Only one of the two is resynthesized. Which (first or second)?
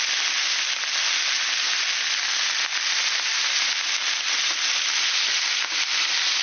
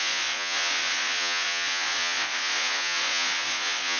second